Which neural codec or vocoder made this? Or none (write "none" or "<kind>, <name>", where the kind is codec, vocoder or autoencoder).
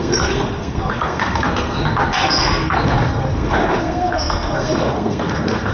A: codec, SNAC